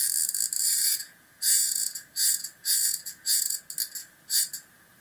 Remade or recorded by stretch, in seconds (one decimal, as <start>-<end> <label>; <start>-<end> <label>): 0.0-0.6 recorded; 0.6-3.6 remade; 3.6-4.0 recorded; 4.0-5.0 remade